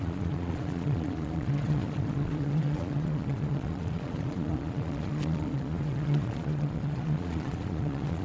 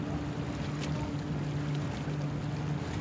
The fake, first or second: first